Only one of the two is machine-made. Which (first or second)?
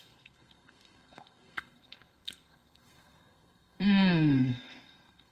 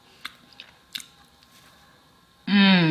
first